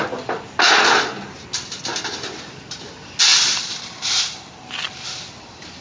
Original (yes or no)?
yes